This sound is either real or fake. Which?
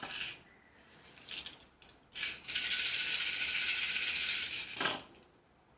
real